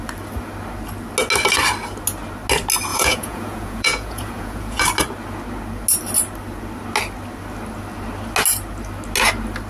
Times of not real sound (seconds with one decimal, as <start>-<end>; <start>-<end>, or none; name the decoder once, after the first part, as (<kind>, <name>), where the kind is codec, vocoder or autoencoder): 2.9-4.8 (vocoder, Vocos)